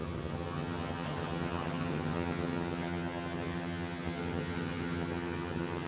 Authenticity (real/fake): fake